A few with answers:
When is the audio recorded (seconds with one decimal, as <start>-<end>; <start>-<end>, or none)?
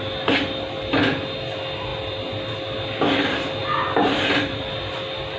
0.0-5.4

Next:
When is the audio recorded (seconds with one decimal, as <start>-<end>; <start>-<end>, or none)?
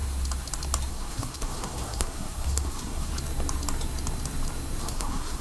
0.0-0.9; 3.1-4.8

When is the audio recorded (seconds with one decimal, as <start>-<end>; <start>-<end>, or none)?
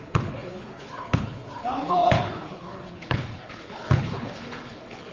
none